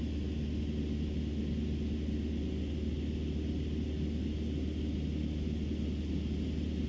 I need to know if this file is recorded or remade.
recorded